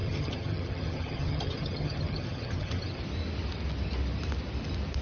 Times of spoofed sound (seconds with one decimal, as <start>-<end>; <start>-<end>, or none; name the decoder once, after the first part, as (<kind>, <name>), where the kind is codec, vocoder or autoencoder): 0.0-3.0 (vocoder, HiFi-GAN)